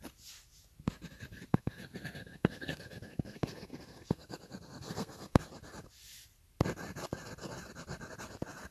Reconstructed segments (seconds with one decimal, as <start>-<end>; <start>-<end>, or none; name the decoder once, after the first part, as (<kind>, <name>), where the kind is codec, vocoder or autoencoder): 1.5-5.4 (codec, SNAC)